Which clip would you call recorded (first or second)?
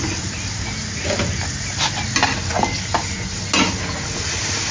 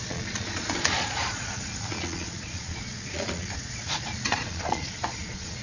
first